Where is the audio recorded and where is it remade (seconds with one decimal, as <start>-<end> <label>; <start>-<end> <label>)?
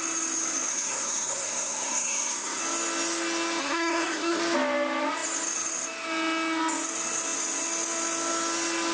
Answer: 0.0-0.7 recorded; 0.7-2.6 remade; 2.6-3.6 recorded; 3.6-4.4 remade; 4.4-8.9 recorded